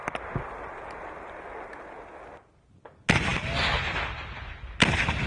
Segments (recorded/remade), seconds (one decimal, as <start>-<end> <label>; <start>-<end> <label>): 0.0-5.3 recorded